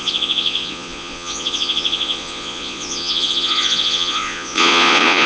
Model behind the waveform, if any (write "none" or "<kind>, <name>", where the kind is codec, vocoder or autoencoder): vocoder, Vocos